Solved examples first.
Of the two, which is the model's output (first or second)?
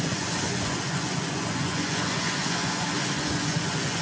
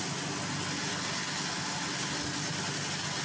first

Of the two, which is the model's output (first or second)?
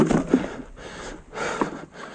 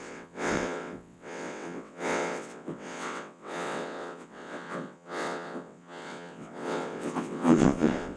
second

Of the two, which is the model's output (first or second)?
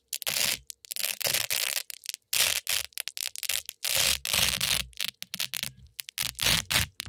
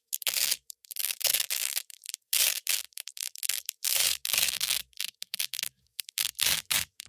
second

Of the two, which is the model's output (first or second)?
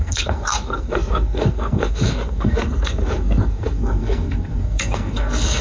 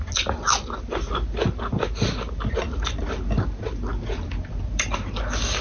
first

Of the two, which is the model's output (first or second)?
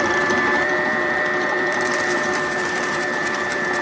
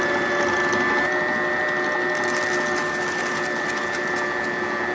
first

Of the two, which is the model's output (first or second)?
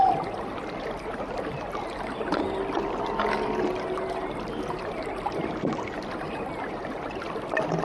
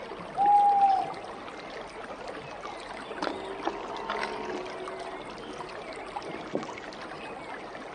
first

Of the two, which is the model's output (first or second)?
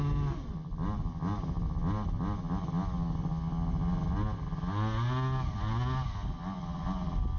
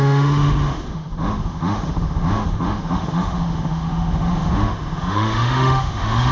second